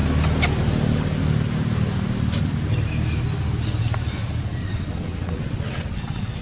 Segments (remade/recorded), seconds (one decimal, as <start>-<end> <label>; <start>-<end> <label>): 0.0-4.6 recorded; 4.6-6.4 remade